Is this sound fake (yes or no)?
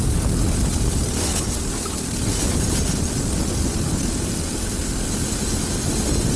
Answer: no